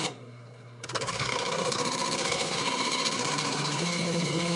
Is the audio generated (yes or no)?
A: yes